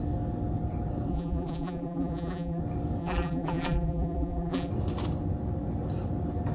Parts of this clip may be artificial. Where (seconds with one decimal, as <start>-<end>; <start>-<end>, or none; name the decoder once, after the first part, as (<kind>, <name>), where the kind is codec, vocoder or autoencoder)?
1.1-2.6 (vocoder, BigVGAN v2); 3.0-4.7